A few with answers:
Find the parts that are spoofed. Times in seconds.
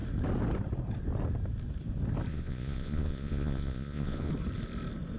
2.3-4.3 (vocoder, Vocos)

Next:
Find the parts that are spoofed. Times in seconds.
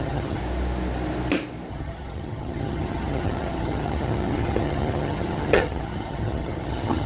0.0-0.4 (vocoder, HiFi-GAN); 1.7-7.1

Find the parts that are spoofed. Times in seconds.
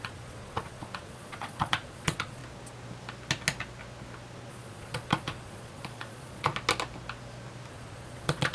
0.0-2.4 (vocoder, Vocos); 4.5-6.5; 7.7-8.5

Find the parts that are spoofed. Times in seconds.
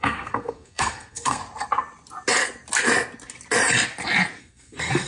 0.0-1.4 (codec, SNAC); 4.4-5.1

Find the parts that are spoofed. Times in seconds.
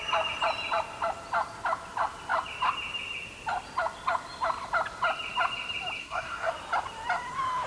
6.0-6.5 (codec, SNAC)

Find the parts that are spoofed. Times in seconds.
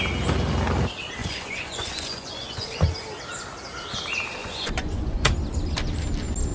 1.2-2.8 (vocoder, Vocos); 4.4-5.3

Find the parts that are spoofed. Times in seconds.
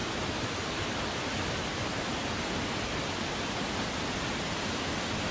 1.0-2.2 (vocoder, BigVGAN v2)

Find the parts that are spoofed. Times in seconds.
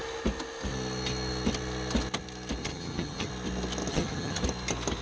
2.6-3.3 (vocoder, HiFi-GAN); 3.9-4.4